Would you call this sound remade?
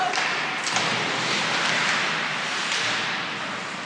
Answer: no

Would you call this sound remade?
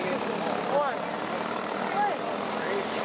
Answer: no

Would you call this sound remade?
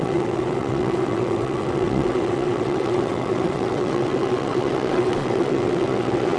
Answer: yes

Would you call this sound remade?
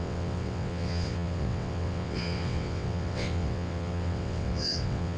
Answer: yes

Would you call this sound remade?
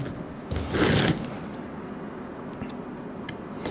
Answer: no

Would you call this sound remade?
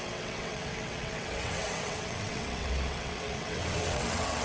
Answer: yes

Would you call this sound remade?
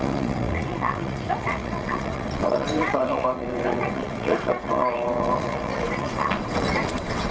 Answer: yes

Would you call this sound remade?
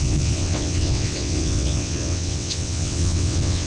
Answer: yes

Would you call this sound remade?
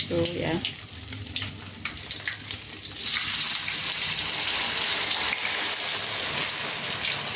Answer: no